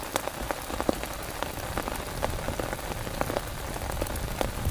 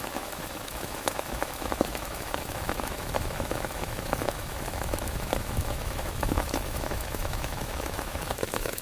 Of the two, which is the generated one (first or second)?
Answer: second